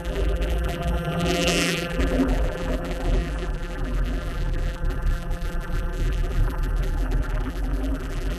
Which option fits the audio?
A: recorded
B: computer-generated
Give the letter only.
B